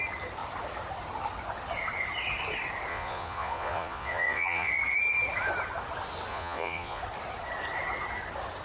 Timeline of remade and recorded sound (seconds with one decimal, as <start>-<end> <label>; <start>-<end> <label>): 0.0-2.9 recorded; 2.9-4.7 remade; 4.7-6.3 recorded; 6.3-7.0 remade; 7.0-8.6 recorded